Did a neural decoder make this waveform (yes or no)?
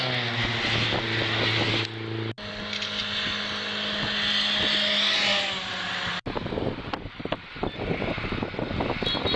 no